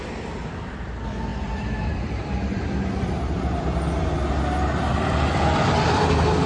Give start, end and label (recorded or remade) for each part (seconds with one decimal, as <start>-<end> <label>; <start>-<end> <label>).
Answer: 0.0-1.3 recorded; 1.3-3.4 remade; 3.4-4.9 recorded; 4.9-6.0 remade; 6.0-6.5 recorded